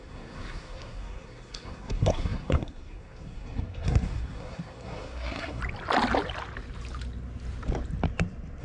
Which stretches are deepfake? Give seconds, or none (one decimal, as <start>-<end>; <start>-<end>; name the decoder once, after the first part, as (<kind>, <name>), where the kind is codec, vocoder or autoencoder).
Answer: 0.0-5.6 (codec, SNAC)